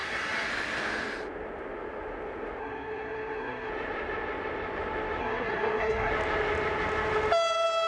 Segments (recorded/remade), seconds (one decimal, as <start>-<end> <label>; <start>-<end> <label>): 0.0-0.5 remade; 0.5-2.6 recorded; 2.6-3.7 remade; 3.7-5.2 recorded; 5.2-6.1 remade; 6.1-7.9 recorded